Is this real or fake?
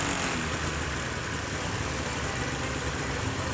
real